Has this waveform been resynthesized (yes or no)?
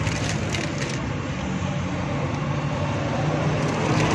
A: no